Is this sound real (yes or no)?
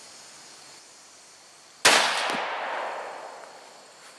yes